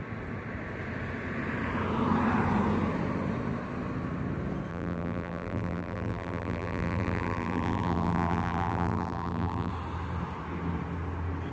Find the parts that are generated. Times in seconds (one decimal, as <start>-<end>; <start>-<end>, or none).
4.7-9.7